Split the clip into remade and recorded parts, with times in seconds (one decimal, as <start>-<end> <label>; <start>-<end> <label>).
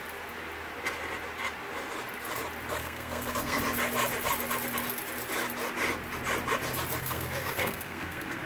0.0-2.8 recorded; 2.8-3.6 remade; 3.6-7.0 recorded; 7.0-8.5 remade